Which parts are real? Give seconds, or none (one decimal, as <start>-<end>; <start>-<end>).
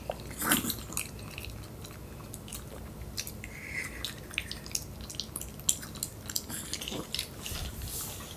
0.0-8.4